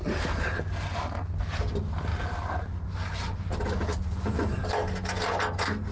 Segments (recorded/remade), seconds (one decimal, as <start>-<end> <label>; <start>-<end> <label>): 0.0-5.9 recorded